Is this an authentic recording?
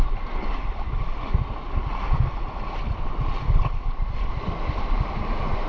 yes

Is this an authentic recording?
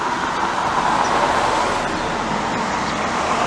yes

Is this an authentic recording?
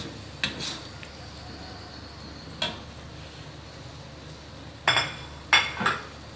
yes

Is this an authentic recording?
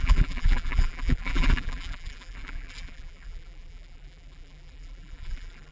no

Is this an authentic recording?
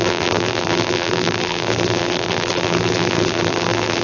no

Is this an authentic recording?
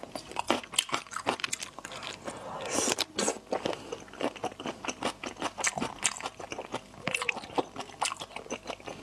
yes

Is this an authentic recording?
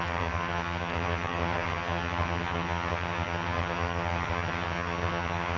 no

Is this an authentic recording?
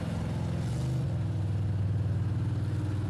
yes